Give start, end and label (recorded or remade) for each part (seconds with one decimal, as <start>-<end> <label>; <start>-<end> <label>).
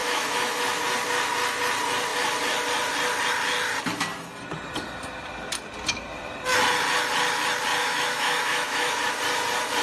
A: 0.0-0.8 remade; 0.8-7.8 recorded; 7.8-9.1 remade; 9.1-9.8 recorded